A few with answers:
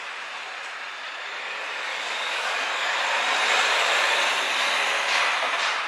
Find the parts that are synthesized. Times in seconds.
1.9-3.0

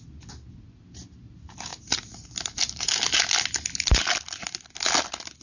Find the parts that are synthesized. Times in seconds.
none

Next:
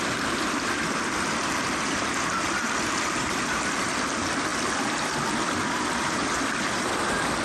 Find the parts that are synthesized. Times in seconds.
none

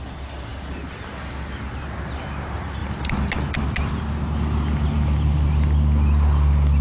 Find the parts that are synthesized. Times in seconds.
none